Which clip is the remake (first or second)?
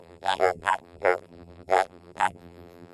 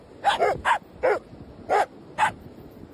first